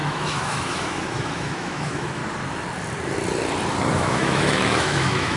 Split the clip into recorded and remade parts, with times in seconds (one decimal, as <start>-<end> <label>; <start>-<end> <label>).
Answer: 0.0-2.2 remade; 2.2-3.9 recorded; 3.9-5.4 remade